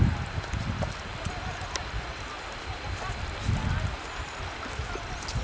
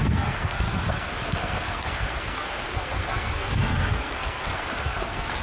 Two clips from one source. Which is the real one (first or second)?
first